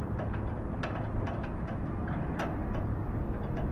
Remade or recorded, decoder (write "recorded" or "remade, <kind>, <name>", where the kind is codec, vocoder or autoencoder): recorded